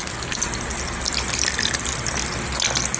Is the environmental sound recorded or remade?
recorded